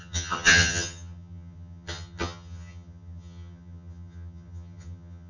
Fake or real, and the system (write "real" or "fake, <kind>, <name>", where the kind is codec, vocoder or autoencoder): fake, vocoder, HiFi-GAN